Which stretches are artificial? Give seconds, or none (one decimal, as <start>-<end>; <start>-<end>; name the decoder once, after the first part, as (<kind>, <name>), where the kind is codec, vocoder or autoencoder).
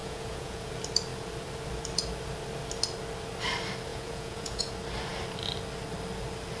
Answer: 0.0-0.7 (vocoder, Vocos); 3.9-4.6